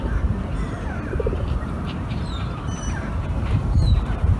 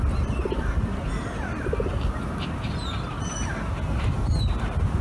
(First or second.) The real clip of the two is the second